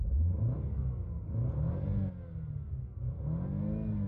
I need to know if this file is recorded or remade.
recorded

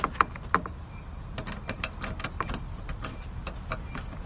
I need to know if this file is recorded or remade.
recorded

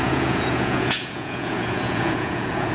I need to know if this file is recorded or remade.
remade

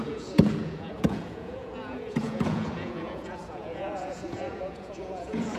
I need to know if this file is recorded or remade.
remade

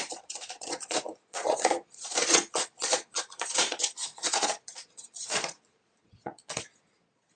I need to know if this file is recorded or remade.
remade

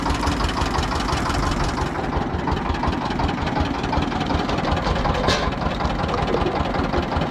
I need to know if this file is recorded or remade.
recorded